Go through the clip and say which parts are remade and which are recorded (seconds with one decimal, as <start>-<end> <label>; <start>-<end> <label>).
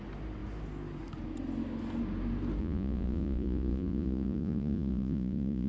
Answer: 0.0-2.6 recorded; 2.6-5.7 remade